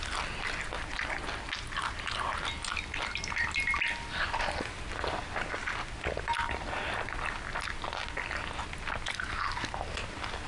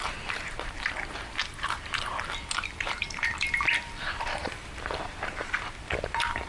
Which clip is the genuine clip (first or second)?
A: first